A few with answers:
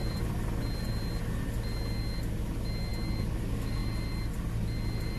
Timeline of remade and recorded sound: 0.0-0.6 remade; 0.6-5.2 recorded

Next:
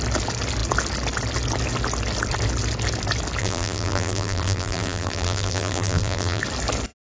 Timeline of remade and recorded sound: 0.0-3.4 recorded; 3.4-6.4 remade; 6.4-7.1 recorded

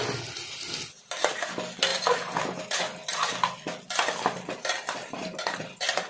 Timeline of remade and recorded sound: 0.0-5.0 recorded; 5.0-6.1 remade

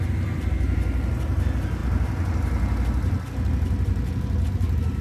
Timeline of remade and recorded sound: 0.0-5.0 recorded

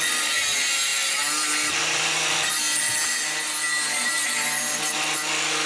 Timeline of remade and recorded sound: 0.0-5.7 recorded